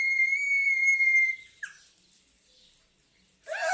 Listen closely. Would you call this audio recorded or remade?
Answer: recorded